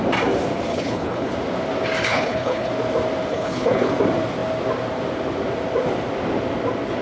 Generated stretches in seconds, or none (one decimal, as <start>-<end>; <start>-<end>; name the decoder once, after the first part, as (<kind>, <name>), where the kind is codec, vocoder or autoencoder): 0.7-1.3 (codec, HILCodec); 2.1-2.7; 3.3-3.9